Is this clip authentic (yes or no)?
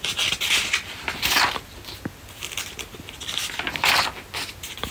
yes